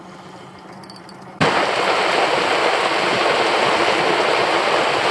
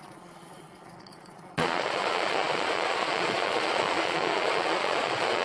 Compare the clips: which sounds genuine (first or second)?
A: first